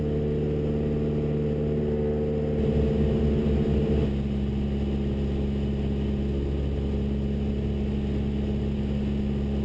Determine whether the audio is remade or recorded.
recorded